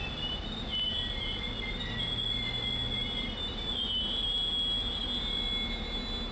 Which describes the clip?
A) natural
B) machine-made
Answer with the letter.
A